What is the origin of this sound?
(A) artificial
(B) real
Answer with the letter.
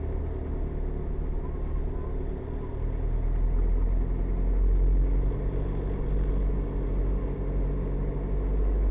B